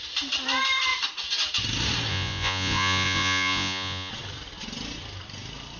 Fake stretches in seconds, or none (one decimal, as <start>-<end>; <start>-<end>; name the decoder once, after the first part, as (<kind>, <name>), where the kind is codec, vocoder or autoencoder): 2.1-4.1 (vocoder, Vocos)